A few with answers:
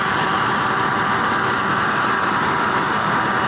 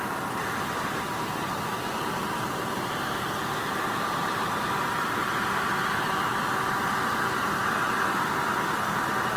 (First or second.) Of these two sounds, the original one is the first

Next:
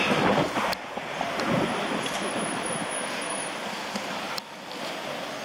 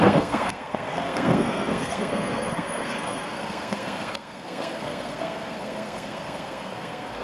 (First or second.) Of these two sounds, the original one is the first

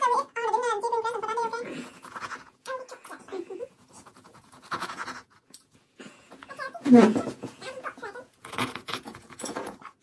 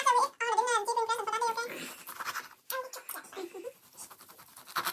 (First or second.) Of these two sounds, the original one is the second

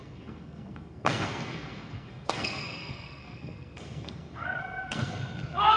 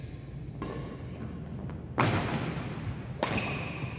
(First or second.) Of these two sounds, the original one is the second